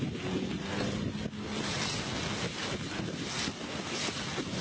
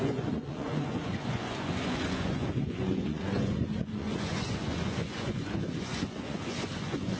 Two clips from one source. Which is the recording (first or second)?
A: first